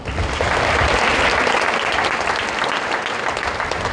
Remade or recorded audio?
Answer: remade